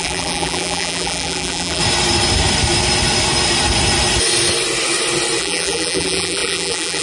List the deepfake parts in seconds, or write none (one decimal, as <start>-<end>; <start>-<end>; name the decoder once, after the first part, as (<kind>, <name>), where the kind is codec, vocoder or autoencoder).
0.0-1.8 (vocoder, BigVGAN v2); 5.4-7.0